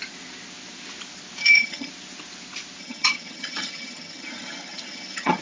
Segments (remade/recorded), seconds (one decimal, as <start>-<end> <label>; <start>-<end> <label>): 0.0-1.4 recorded; 1.4-1.9 remade; 1.9-2.8 recorded; 2.8-5.4 remade